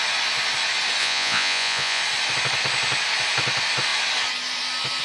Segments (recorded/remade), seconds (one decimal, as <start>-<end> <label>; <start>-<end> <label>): 0.0-1.0 recorded; 1.0-2.0 remade; 2.0-5.0 recorded